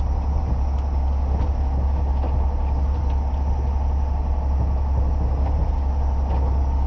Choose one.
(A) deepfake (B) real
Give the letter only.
B